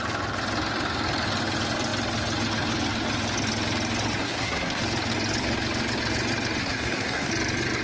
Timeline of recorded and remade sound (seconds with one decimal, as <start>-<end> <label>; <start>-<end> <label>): 0.0-4.2 recorded; 4.2-4.8 remade; 4.8-6.6 recorded; 6.6-7.3 remade; 7.3-7.8 recorded